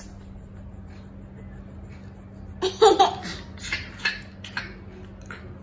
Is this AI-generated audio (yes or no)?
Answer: no